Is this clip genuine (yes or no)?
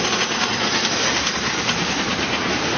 yes